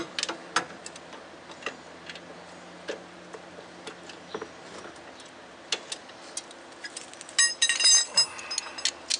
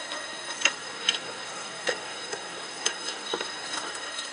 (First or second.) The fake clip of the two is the second